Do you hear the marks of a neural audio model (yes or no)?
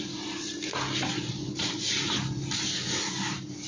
yes